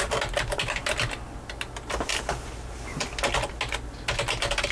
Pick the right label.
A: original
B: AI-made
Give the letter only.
A